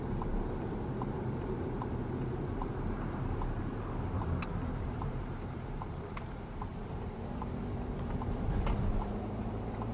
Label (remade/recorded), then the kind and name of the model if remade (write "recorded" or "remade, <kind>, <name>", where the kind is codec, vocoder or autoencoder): remade, vocoder, BigVGAN v2